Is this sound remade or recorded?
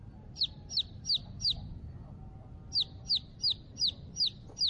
recorded